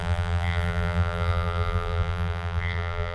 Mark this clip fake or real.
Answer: fake